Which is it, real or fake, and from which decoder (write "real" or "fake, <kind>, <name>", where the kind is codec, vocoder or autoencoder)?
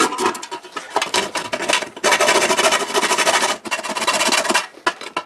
real